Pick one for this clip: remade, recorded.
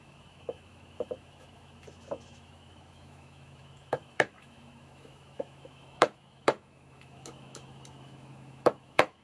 remade